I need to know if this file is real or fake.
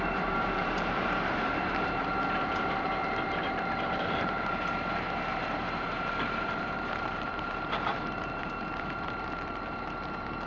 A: fake